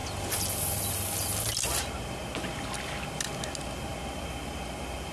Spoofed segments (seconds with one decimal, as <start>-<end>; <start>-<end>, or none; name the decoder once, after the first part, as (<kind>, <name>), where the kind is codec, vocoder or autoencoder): none